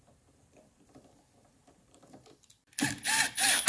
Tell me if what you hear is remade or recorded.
remade